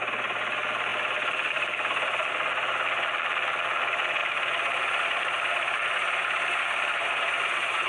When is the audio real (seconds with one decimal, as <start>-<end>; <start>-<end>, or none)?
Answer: 0.0-4.2